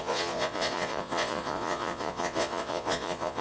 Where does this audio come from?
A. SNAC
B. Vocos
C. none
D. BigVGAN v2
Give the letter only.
B